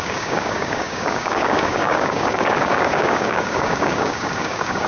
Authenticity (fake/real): fake